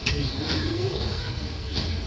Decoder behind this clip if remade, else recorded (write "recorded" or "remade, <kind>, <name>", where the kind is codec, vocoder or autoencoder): remade, codec, SNAC